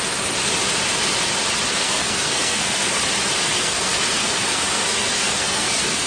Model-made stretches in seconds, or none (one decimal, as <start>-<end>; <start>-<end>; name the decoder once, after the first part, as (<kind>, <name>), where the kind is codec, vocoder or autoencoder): 1.7-3.0 (codec, SNAC); 3.4-6.1